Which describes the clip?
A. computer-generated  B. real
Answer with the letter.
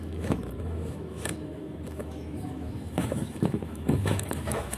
A